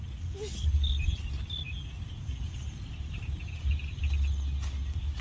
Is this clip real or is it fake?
real